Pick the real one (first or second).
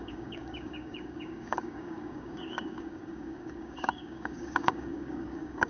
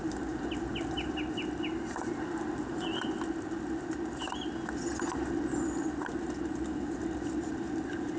second